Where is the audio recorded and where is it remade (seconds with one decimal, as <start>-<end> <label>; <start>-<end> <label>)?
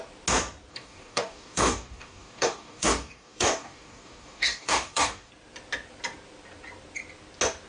0.0-0.7 recorded; 0.7-5.3 remade; 5.3-7.7 recorded